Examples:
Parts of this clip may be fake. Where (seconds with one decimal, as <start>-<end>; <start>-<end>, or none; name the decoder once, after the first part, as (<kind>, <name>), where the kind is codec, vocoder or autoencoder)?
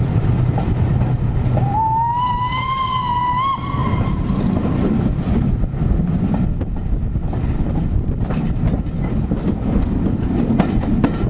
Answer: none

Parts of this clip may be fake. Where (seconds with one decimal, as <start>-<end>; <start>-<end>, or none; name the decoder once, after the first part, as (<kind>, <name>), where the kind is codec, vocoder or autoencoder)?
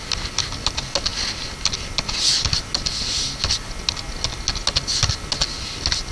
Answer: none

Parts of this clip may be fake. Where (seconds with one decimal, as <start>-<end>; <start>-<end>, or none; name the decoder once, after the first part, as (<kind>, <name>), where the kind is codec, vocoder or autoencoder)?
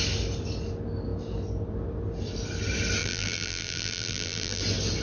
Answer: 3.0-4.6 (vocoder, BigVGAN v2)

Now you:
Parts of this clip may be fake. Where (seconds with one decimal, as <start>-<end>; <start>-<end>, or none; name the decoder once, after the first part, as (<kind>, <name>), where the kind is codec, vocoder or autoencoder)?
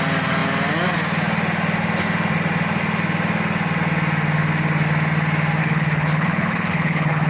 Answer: 5.6-7.3 (codec, HILCodec)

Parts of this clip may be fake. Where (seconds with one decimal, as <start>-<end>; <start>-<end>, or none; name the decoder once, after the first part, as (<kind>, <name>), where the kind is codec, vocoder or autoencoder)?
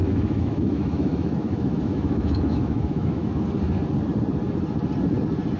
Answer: 0.0-3.4 (autoencoder, DAC-VAE)